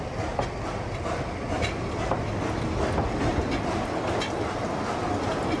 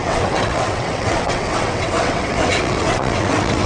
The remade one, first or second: second